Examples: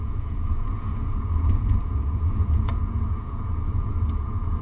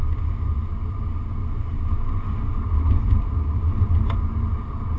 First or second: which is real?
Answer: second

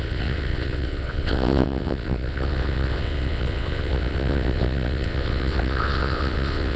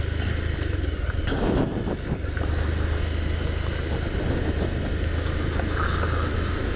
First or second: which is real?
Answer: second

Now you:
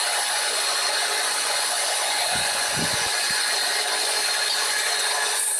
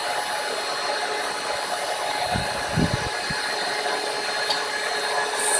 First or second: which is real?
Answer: second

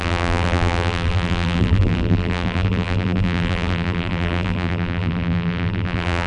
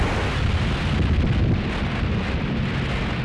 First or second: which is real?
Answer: second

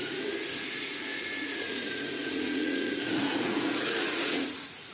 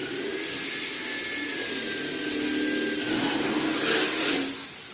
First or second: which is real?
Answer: second